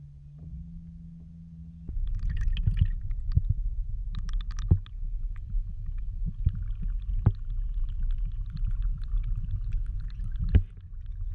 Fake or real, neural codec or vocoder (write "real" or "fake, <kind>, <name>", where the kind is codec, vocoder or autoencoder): real